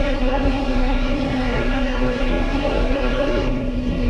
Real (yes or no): no